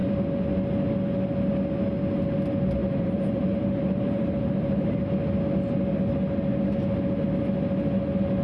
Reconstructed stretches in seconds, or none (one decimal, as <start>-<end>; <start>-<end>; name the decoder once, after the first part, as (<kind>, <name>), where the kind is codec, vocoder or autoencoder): 2.8-5.1 (vocoder, BigVGAN v2)